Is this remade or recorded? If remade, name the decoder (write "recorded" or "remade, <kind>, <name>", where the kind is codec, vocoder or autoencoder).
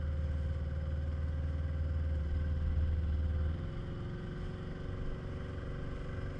recorded